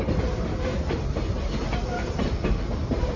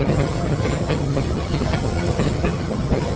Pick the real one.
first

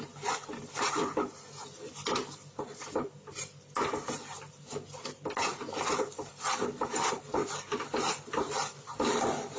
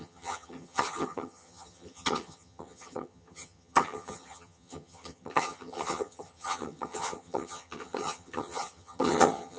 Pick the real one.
first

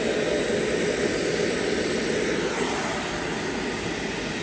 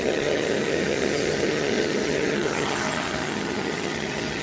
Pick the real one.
first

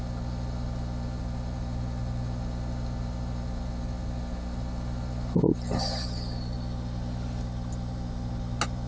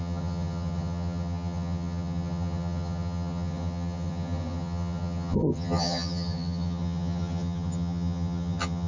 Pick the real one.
first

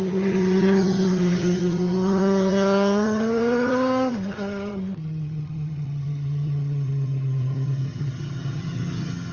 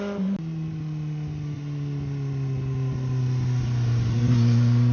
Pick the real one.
second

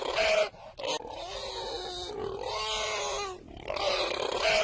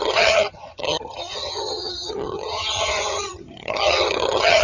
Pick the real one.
first